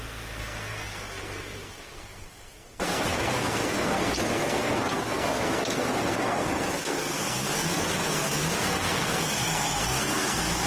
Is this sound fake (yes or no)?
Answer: yes